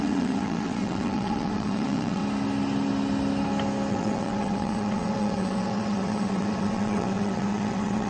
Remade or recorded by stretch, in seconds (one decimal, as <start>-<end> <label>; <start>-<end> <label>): 0.0-2.2 remade; 2.2-3.9 recorded; 3.9-8.1 remade